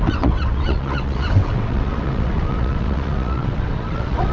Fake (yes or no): yes